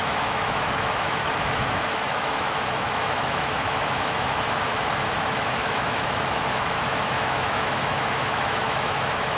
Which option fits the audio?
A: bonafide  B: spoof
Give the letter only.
B